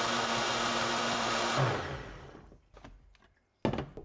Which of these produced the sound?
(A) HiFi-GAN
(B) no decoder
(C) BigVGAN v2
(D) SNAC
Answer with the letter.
B